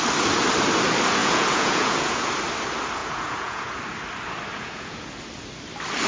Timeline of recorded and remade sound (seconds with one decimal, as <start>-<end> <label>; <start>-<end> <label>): 0.0-1.2 recorded; 1.2-2.3 remade; 2.3-3.0 recorded; 3.0-3.8 remade; 3.8-4.5 recorded; 4.5-5.1 remade; 5.1-6.1 recorded